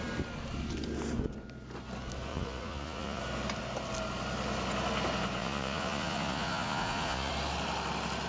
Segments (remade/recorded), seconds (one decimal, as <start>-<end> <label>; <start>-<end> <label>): 0.0-2.3 recorded; 2.3-3.2 remade; 3.2-5.4 recorded; 5.4-7.3 remade; 7.3-8.3 recorded